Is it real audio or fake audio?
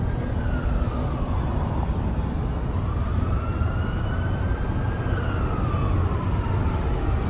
real